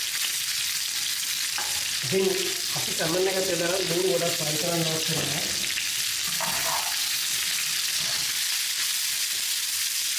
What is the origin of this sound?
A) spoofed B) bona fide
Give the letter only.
B